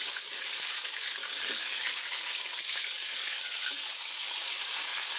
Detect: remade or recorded remade